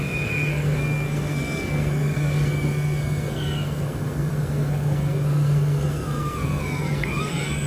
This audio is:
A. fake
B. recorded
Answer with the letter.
A